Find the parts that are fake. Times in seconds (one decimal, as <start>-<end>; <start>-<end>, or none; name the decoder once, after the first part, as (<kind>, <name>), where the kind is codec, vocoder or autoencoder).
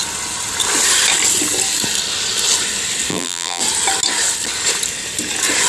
3.1-3.6 (vocoder, BigVGAN v2)